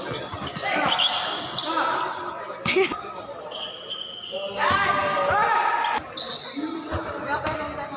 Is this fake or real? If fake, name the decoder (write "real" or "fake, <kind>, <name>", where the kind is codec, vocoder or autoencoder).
real